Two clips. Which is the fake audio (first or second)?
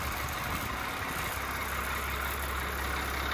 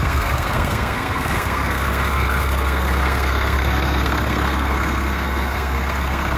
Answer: second